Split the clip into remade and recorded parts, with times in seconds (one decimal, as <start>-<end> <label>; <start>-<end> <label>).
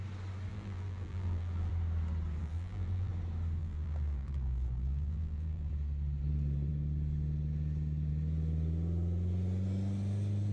0.0-0.5 recorded; 0.5-1.7 remade; 1.7-2.4 recorded; 2.4-3.1 remade; 3.1-3.6 recorded; 3.6-5.7 remade; 5.7-10.5 recorded